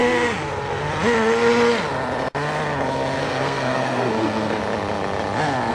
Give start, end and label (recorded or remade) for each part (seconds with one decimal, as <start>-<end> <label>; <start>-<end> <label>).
0.0-3.2 recorded; 3.2-4.6 remade; 4.6-5.7 recorded